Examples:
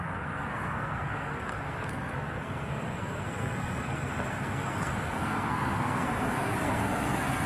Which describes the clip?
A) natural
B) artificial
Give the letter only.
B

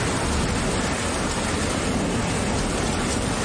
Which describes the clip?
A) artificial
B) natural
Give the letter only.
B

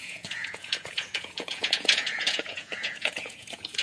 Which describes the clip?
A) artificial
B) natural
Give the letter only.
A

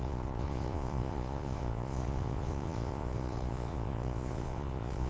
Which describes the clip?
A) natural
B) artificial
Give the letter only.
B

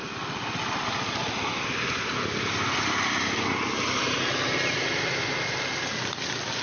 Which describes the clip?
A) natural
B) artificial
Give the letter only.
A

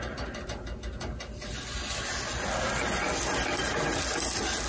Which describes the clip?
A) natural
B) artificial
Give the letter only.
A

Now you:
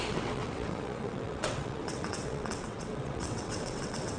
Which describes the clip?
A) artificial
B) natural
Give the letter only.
A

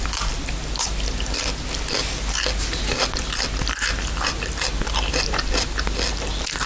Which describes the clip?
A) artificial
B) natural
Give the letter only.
B